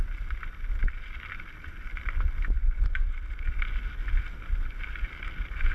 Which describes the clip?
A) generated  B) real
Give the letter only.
B